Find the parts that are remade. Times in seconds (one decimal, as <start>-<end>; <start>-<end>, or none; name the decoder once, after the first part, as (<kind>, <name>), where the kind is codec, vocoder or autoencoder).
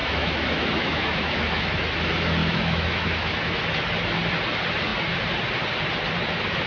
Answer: 0.0-1.8 (autoencoder, DAC-VAE); 2.4-3.6